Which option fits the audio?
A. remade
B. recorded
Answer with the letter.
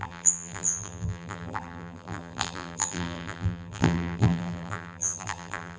A